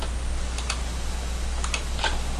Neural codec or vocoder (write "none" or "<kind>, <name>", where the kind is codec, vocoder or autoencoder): none